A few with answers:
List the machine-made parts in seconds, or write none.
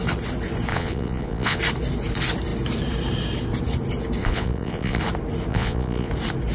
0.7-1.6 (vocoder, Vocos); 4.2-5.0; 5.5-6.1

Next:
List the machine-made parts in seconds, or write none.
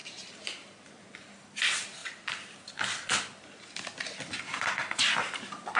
0.0-1.0 (vocoder, BigVGAN v2); 4.8-5.8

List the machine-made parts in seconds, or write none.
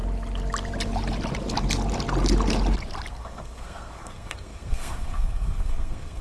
3.1-6.2 (codec, SNAC)